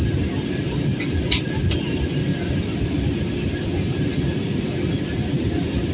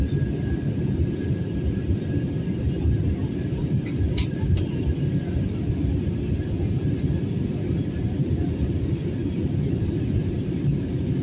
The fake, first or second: second